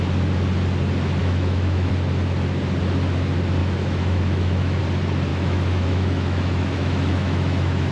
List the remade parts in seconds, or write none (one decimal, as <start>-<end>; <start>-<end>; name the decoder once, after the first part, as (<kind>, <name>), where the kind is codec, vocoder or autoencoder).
1.2-1.9 (autoencoder, DAC-VAE); 3.6-4.8; 5.3-7.9